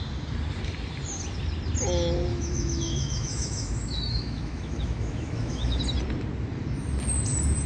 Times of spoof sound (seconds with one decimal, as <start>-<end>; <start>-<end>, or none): 2.3-5.8